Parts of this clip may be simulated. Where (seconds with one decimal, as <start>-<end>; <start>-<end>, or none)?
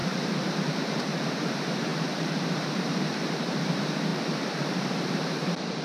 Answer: 0.0-5.8